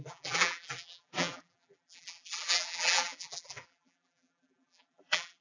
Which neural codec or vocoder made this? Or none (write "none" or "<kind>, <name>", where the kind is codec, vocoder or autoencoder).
vocoder, BigVGAN v2